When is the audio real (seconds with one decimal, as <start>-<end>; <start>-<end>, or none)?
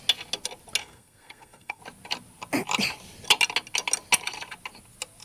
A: 0.0-0.8; 1.8-5.2